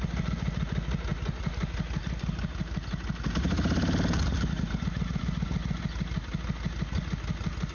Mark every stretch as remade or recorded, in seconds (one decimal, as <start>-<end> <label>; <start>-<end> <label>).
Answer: 0.0-7.7 recorded